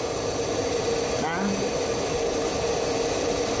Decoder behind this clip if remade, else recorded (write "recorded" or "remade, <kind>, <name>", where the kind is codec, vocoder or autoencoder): recorded